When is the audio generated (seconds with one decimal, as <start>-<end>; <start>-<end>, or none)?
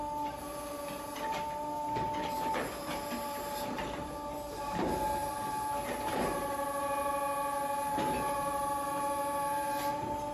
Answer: 0.0-10.3